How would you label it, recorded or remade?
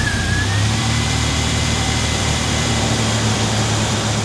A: remade